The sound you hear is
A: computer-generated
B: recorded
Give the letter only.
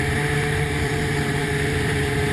A